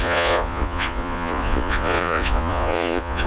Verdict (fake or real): fake